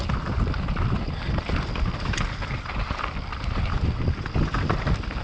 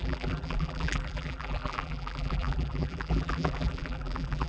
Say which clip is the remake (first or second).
second